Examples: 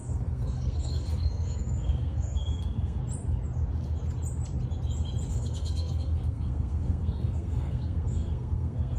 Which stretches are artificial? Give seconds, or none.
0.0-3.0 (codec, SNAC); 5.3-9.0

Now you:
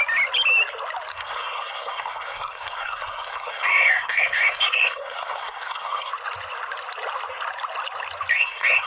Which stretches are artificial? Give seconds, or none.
1.1-6.1 (codec, SNAC); 8.3-8.9

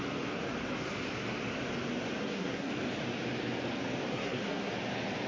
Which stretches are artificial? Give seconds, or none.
2.2-2.7 (codec, SNAC); 4.1-4.7

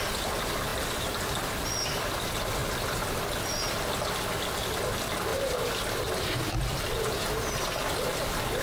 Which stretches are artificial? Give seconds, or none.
none

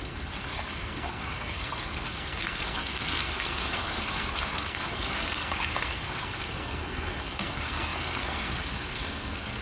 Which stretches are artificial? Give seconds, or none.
0.0-9.6 (codec, SNAC)

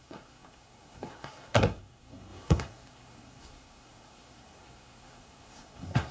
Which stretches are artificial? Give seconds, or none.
0.0-6.1 (codec, SNAC)

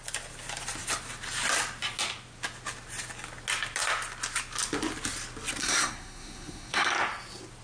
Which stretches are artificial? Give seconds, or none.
5.6-6.9 (codec, SNAC)

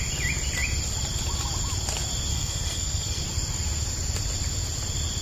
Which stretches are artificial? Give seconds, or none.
2.3-3.2 (codec, SNAC)